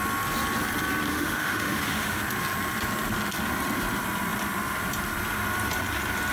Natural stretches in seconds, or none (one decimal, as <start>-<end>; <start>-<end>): 0.0-1.1; 2.2-6.3